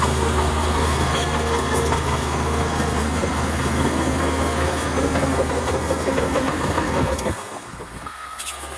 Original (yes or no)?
no